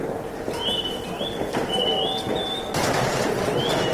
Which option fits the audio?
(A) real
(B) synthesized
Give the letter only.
A